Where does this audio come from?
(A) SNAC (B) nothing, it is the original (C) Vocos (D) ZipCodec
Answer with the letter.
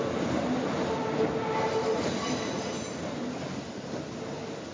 B